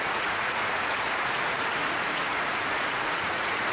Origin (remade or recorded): remade